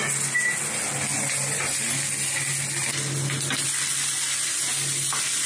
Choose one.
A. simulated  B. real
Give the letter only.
B